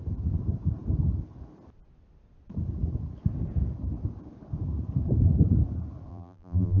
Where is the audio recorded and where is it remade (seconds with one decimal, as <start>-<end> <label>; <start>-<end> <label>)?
0.0-6.1 recorded; 6.1-6.8 remade